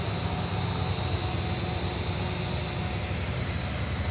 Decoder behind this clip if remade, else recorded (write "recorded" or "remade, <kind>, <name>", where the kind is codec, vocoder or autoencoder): recorded